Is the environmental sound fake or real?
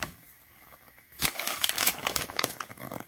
fake